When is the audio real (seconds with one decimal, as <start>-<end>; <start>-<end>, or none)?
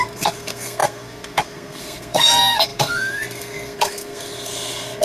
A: none